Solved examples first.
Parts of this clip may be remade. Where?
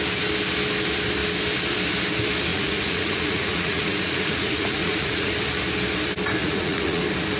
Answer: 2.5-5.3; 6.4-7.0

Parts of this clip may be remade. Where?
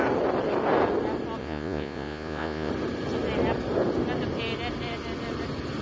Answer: 1.4-2.7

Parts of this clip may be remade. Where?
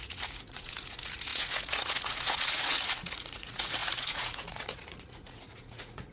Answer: 0.0-6.1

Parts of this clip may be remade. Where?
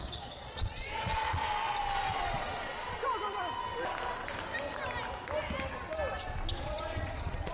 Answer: 0.0-1.4; 2.1-3.0; 6.6-7.5